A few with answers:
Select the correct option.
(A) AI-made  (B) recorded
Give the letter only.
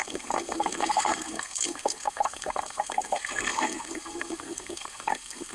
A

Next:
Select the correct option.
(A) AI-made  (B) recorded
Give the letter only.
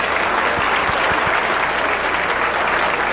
B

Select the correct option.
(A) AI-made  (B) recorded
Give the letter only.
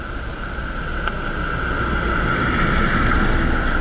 B